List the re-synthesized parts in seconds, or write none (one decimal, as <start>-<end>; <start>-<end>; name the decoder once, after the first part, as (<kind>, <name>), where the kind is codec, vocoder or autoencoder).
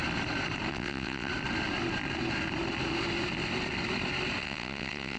0.7-1.3 (vocoder, WaveNeXt); 4.4-5.2